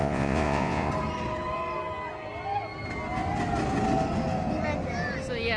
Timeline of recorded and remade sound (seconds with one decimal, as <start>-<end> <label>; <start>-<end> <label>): 0.0-0.9 remade; 0.9-5.6 recorded